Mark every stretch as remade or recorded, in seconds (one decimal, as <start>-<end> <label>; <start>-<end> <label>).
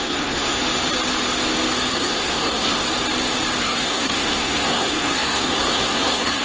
0.0-0.6 remade; 0.6-1.9 recorded; 1.9-2.8 remade; 2.8-3.6 recorded; 3.6-6.4 remade